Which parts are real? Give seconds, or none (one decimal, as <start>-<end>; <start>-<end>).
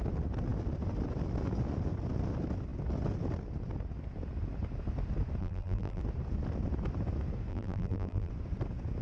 0.0-5.4; 6.0-7.5; 8.3-9.0